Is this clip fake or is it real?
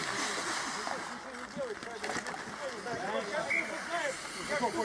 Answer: real